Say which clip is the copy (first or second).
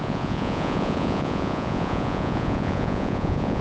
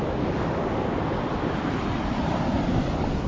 first